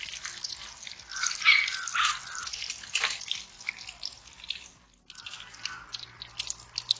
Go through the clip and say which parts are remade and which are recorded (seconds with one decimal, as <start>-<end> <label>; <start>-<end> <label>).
0.0-7.0 recorded